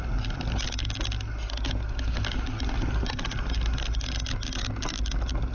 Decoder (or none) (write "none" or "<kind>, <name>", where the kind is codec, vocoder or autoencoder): none